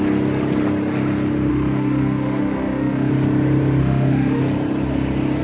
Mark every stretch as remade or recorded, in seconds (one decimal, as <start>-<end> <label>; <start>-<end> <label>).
0.0-1.5 recorded; 1.5-3.1 remade; 3.1-3.8 recorded; 3.8-4.4 remade; 4.4-5.4 recorded